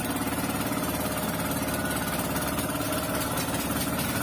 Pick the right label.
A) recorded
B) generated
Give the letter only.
A